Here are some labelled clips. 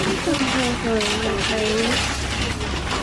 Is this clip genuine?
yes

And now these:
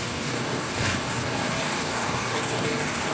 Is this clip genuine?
no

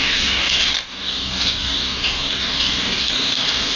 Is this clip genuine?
no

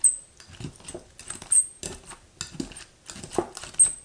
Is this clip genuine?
yes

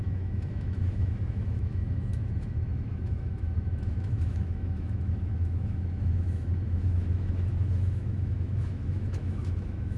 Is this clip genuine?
no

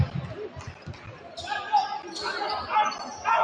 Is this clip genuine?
yes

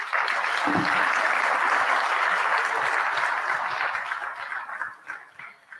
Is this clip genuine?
yes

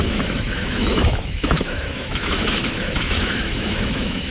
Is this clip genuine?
no